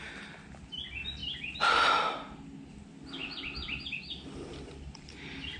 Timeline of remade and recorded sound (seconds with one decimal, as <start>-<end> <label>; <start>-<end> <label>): 0.0-1.2 recorded; 1.2-2.7 remade; 2.7-3.2 recorded; 3.2-5.6 remade